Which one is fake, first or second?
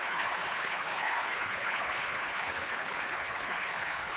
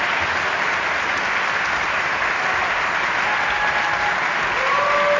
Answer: first